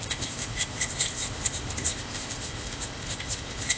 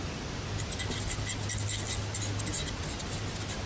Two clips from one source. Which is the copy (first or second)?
first